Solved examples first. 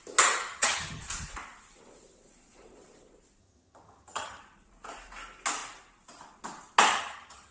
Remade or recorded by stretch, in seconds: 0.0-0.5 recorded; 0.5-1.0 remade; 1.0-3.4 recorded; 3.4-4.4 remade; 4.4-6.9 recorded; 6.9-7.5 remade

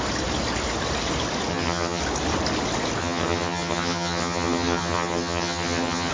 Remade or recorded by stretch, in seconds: 0.0-1.5 recorded; 1.5-2.0 remade; 2.0-3.0 recorded; 3.0-6.1 remade

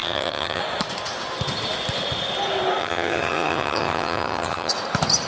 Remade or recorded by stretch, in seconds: 0.0-0.6 remade; 0.6-2.8 recorded; 2.8-4.7 remade; 4.7-5.3 recorded

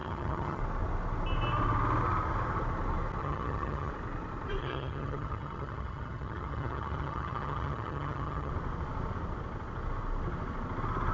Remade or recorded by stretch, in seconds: 0.0-0.6 remade; 0.6-3.2 recorded; 3.2-3.9 remade; 3.9-4.6 recorded; 4.6-8.5 remade; 8.5-11.1 recorded

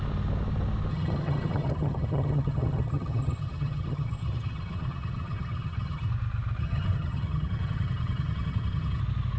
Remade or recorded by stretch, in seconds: 0.0-0.9 recorded; 0.9-6.1 remade; 6.1-6.6 recorded; 6.6-9.0 remade; 9.0-9.4 recorded

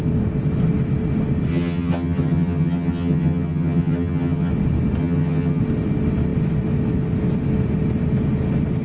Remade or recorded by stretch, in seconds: 0.0-1.5 recorded; 1.5-4.5 remade; 4.5-5.0 recorded; 5.0-5.6 remade; 5.6-8.8 recorded

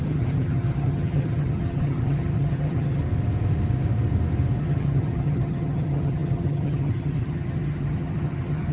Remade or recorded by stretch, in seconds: 0.0-3.0 remade; 3.0-4.6 recorded; 4.6-8.7 remade